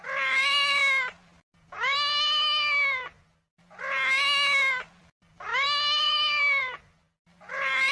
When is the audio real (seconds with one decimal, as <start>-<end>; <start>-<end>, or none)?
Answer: 0.8-5.0; 5.5-6.0